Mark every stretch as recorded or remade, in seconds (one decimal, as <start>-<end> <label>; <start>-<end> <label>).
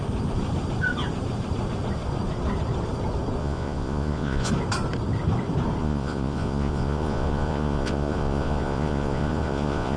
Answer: 0.0-3.4 recorded; 3.4-4.5 remade; 4.5-5.8 recorded; 5.8-10.0 remade